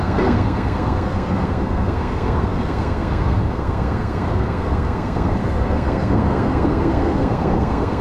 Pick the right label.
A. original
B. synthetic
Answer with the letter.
B